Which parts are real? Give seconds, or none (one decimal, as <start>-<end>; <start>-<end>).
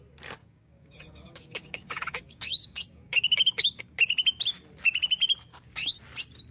0.0-0.4; 3.8-5.5; 6.0-6.5